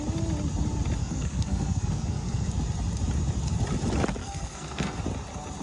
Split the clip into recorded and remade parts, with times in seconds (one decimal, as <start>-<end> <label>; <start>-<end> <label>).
0.0-1.0 recorded; 1.0-2.5 remade; 2.5-4.2 recorded; 4.2-5.0 remade; 5.0-5.6 recorded